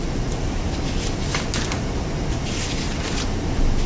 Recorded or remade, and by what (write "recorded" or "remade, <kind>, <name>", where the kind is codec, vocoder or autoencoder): recorded